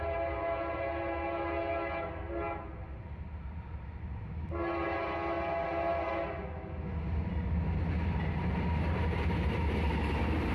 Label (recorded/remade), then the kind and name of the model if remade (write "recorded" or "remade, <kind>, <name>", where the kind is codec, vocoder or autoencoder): recorded